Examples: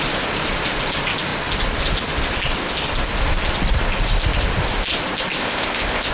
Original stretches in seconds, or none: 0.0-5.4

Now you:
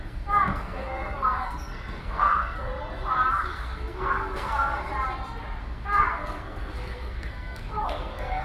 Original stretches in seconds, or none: 2.7-3.3; 4.9-5.6